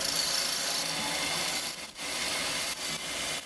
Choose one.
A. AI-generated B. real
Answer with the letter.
B